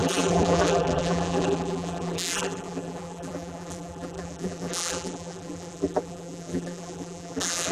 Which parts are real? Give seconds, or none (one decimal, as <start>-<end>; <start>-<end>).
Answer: none